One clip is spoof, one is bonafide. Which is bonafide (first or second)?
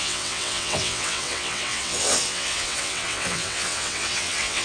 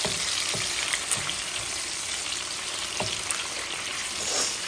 second